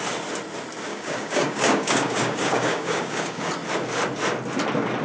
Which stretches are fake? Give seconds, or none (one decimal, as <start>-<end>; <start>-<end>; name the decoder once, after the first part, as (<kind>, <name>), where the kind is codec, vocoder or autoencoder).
0.9-3.5 (codec, DAC)